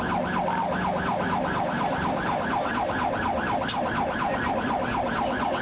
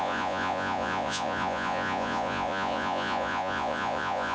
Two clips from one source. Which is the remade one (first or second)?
second